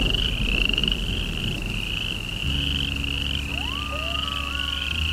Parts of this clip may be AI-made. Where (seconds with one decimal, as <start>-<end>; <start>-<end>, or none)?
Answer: none